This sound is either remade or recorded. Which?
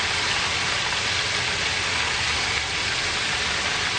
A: recorded